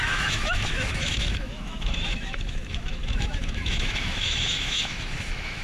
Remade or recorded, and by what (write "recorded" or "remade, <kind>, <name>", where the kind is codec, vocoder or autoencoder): remade, autoencoder, DAC-VAE